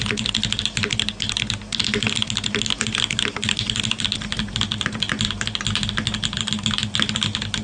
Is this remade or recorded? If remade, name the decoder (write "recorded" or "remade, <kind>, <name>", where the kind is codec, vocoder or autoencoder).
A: recorded